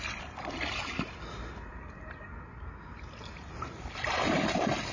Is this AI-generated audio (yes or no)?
no